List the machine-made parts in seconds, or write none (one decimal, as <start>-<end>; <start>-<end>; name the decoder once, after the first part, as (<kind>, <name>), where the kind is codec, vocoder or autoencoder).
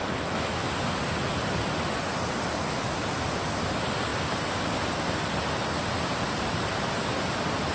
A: 0.0-0.7 (autoencoder, DAC-VAE)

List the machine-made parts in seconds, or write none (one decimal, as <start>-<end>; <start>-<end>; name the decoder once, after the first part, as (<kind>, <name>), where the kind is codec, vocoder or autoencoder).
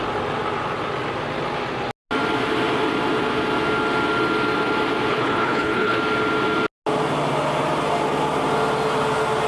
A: 5.1-6.0 (codec, HILCodec)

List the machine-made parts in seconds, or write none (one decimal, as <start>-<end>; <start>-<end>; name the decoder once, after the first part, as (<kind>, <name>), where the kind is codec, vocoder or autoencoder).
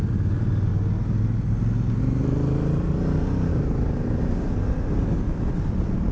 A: 3.5-4.2 (vocoder, BigVGAN v2)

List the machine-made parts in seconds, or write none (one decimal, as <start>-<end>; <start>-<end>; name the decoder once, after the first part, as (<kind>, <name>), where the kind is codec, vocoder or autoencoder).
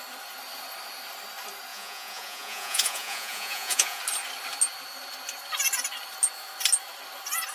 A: 1.7-4.0 (vocoder, Vocos)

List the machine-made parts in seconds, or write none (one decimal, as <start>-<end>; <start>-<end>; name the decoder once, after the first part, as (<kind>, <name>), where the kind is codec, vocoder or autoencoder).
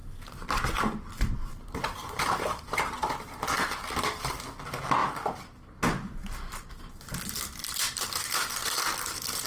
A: 1.9-3.3 (vocoder, BigVGAN v2)